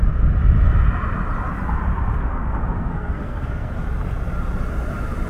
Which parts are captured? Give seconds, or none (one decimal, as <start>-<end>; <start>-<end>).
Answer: 0.0-2.2; 3.7-5.3